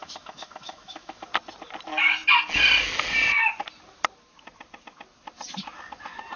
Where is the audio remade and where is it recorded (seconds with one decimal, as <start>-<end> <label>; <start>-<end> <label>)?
0.0-1.3 remade; 1.3-6.4 recorded